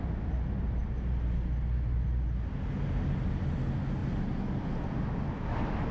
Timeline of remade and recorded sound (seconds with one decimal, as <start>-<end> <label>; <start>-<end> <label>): 0.0-4.0 recorded; 4.0-4.7 remade; 4.7-5.9 recorded